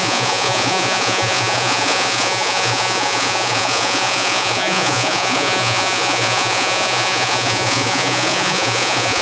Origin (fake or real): fake